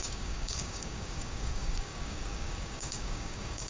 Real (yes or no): no